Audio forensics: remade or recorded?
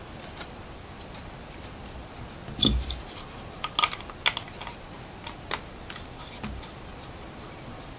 recorded